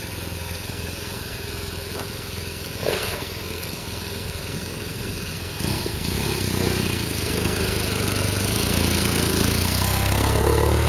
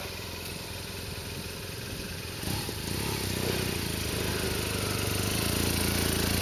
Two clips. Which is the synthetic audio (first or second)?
first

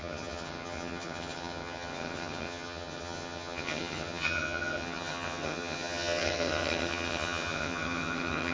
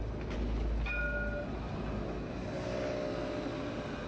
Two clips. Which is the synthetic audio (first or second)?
first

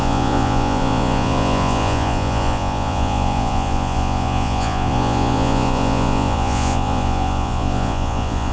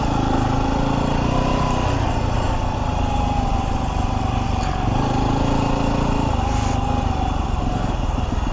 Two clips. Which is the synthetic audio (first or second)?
first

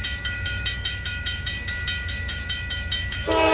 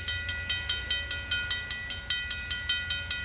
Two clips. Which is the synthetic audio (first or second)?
first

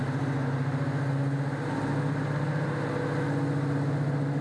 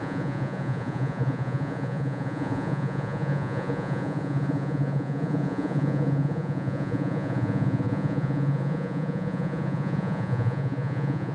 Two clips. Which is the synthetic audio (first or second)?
second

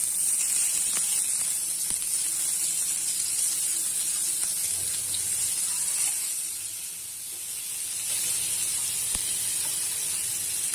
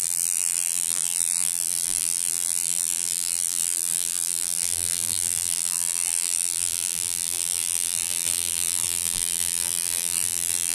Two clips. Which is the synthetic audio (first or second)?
second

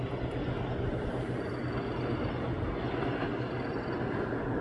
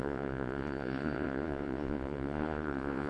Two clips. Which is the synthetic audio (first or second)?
second